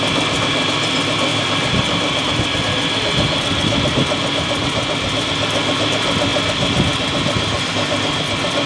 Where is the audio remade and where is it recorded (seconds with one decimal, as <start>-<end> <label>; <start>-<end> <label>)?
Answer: 0.0-1.3 recorded; 1.3-2.3 remade; 2.3-4.6 recorded; 4.6-5.3 remade; 5.3-8.7 recorded